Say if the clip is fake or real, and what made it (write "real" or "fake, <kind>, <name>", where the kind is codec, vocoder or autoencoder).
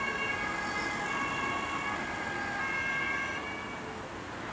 real